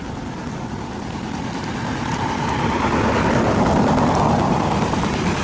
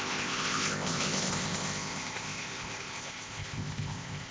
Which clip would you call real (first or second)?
first